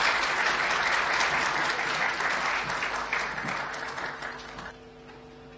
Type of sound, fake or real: real